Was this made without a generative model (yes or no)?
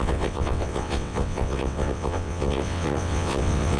no